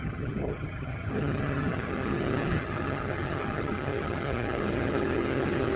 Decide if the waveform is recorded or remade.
remade